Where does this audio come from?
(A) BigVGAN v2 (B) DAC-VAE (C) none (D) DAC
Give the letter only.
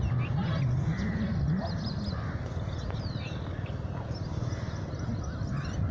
C